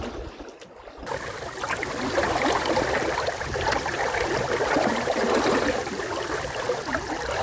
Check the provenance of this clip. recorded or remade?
recorded